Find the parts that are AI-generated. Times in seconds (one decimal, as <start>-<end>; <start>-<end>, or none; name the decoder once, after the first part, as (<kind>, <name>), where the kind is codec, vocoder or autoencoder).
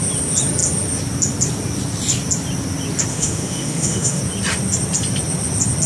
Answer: 3.1-4.2 (autoencoder, DAC-VAE)